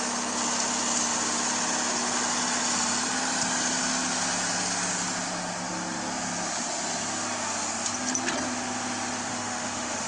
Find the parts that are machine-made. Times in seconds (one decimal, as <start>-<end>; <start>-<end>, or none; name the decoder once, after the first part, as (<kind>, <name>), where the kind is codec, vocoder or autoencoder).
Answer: 9.3-10.1 (autoencoder, DAC-VAE)